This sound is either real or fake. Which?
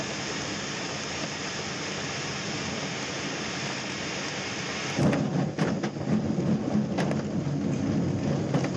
real